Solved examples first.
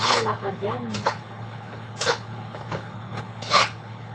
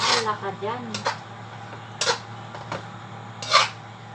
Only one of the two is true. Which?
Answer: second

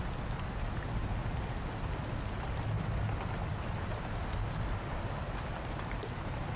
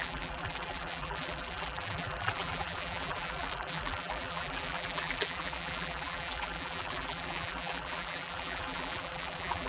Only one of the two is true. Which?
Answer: first